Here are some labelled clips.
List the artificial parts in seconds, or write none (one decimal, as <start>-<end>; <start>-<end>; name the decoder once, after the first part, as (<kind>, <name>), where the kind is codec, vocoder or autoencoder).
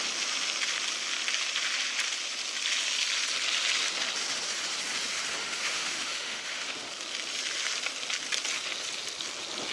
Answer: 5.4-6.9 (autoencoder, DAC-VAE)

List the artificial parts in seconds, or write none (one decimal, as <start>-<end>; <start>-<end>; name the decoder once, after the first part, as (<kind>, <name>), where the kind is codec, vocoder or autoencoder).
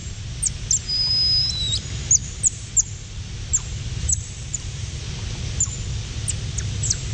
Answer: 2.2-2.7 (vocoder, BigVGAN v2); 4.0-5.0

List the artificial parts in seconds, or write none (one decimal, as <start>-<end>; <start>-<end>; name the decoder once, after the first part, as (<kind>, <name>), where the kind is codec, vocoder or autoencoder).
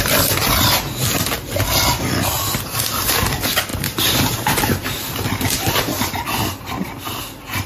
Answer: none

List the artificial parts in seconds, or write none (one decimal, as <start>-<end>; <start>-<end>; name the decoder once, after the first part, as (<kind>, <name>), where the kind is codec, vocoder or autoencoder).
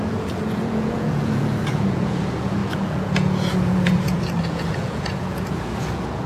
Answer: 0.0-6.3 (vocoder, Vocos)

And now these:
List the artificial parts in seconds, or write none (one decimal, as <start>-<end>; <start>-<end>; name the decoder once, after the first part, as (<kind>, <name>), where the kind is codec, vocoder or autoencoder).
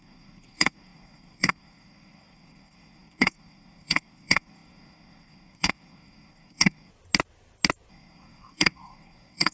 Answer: 0.0-6.9 (codec, SNAC); 7.9-9.5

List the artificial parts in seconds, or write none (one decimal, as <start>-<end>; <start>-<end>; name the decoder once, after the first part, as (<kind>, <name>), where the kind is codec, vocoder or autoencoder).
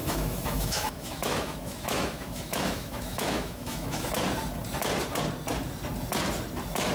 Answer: 0.0-4.1 (autoencoder, DAC-VAE)